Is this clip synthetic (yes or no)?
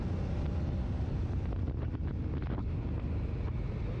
no